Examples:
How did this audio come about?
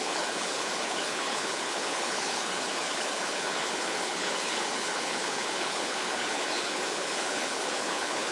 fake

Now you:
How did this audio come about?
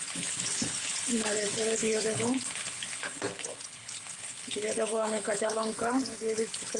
fake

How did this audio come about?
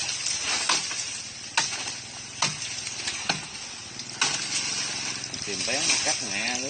real